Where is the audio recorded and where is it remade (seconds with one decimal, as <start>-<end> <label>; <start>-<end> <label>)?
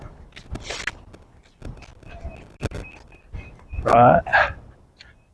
0.0-5.3 recorded